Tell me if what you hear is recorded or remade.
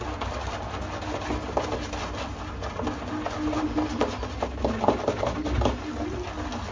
recorded